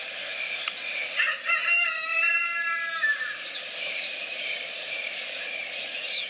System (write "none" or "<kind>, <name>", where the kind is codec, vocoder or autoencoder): vocoder, BigVGAN v2